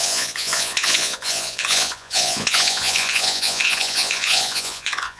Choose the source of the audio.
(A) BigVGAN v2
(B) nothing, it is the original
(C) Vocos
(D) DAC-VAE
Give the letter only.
C